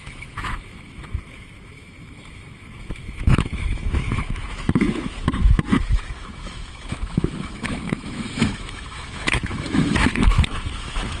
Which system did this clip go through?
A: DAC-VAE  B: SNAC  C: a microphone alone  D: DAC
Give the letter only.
A